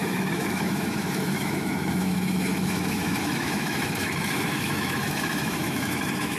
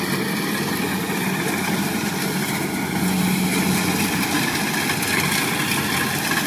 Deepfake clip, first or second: first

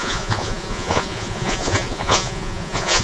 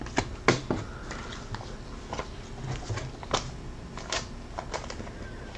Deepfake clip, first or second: first